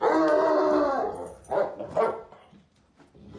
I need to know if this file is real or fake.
real